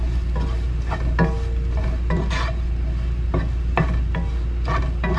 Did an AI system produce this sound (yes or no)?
no